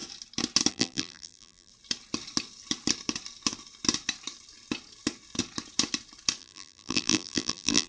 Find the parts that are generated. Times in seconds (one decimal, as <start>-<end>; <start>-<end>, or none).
0.7-1.7; 6.4-7.9